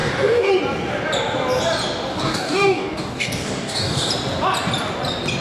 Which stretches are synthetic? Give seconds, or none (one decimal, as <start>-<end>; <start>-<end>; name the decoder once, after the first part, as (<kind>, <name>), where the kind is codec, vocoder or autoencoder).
0.0-0.5 (codec, DAC); 2.1-4.1